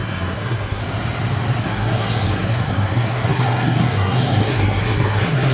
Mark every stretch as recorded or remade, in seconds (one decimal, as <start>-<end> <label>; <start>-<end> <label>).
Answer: 0.0-0.8 remade; 0.8-1.6 recorded; 1.6-5.5 remade